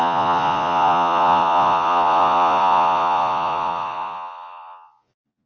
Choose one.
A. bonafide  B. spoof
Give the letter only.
B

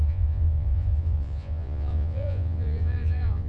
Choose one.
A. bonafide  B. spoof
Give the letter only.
B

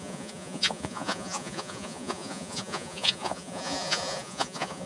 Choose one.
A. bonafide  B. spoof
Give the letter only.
B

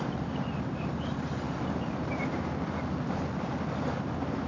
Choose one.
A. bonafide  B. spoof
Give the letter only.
A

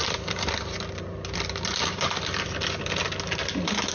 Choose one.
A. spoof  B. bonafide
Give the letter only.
B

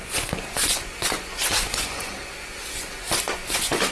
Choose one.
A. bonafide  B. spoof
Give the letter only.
B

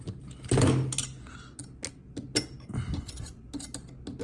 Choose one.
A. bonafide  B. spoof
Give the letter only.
A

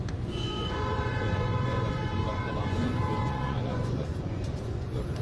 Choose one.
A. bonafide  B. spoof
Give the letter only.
B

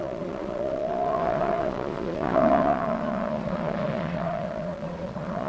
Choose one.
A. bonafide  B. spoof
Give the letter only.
B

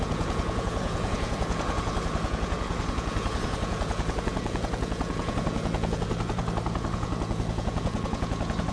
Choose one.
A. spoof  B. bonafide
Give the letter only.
A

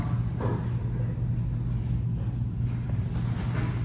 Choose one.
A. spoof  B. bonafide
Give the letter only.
B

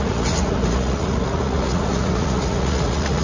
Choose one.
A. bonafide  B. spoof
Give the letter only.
B